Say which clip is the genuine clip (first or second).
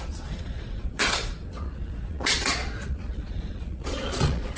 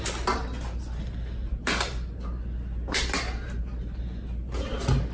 second